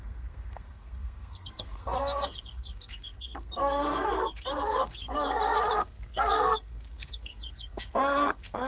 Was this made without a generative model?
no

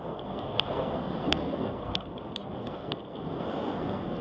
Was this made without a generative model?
no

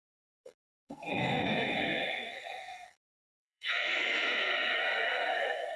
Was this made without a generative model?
no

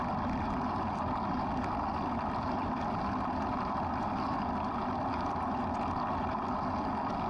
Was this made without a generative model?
yes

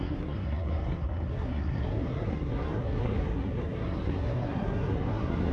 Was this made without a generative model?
no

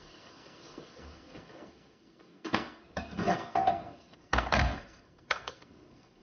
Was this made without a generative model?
no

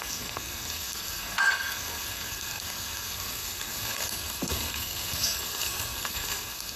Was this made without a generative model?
no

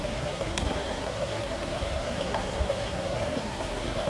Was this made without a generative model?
no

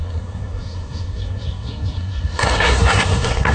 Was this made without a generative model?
no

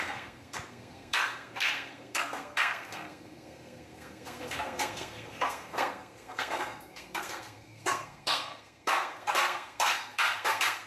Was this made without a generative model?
no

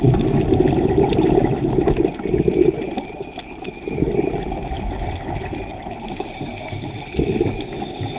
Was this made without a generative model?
yes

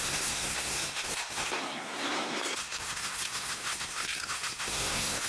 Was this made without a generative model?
no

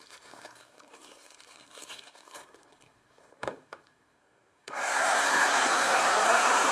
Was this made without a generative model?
no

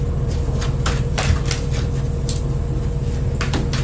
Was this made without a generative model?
yes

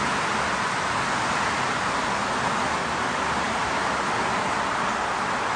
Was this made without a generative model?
yes